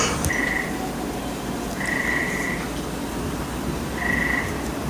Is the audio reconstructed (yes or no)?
no